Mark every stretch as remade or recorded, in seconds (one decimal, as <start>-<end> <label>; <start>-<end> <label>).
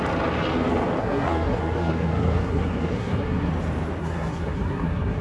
0.0-1.0 recorded; 1.0-3.5 remade; 3.5-4.0 recorded; 4.0-5.2 remade